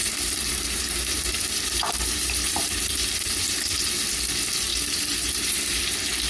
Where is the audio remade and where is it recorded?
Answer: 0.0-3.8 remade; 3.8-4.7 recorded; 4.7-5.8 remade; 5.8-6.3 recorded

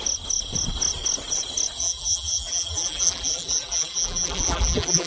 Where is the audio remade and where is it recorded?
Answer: 0.0-1.8 recorded; 1.8-5.1 remade